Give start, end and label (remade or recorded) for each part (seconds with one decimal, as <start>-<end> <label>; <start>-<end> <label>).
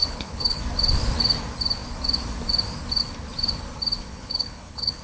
0.0-0.6 remade; 0.6-4.1 recorded; 4.1-5.0 remade